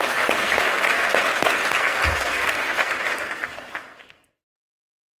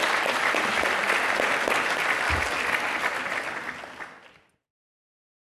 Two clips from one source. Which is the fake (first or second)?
first